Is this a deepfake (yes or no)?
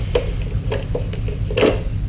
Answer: no